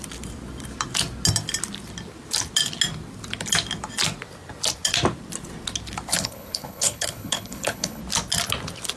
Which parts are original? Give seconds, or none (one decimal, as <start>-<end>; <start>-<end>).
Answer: 0.0-6.1; 8.0-9.0